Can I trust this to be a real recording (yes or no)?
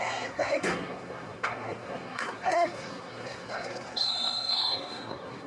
no